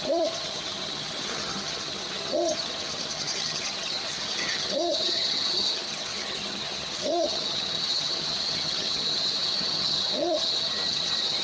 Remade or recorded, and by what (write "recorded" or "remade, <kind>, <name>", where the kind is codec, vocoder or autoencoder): remade, vocoder, HiFi-GAN